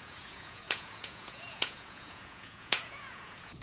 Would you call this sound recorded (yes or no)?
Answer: no